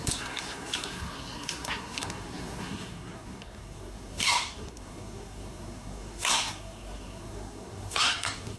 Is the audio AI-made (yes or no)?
yes